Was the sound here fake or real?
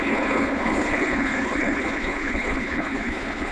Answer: fake